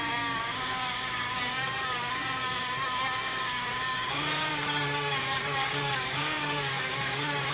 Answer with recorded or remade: remade